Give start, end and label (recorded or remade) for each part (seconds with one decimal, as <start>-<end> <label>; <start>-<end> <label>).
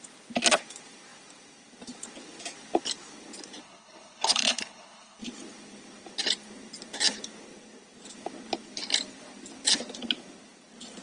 0.0-3.6 recorded; 3.6-5.2 remade; 5.2-11.0 recorded